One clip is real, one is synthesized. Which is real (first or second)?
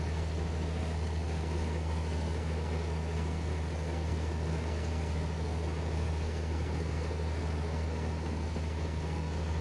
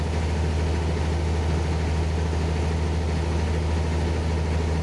second